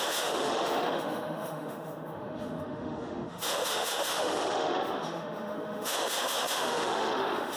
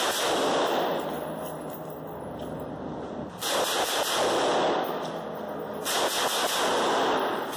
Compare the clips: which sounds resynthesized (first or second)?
first